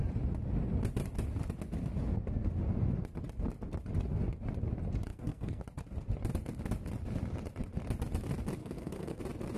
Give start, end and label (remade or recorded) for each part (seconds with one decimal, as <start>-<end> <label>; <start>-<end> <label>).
0.0-5.1 recorded; 5.1-5.6 remade; 5.6-8.6 recorded; 8.6-9.2 remade; 9.2-9.6 recorded